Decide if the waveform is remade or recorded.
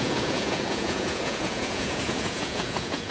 remade